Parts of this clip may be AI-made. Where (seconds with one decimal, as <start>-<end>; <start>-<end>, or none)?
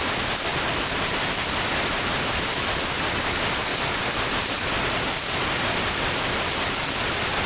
none